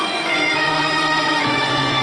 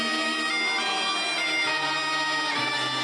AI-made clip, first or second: first